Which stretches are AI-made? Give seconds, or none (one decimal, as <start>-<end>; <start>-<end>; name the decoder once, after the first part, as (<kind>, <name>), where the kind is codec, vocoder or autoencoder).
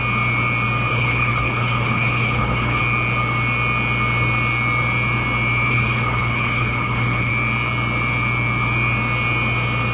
0.9-2.8 (codec, HILCodec); 5.7-7.3